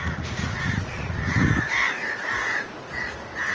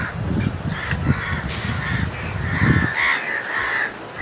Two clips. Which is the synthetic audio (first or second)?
first